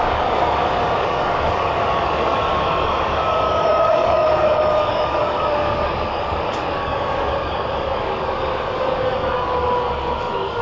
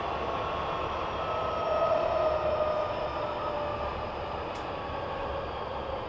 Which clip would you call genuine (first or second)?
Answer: second